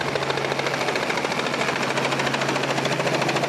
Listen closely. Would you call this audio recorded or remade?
recorded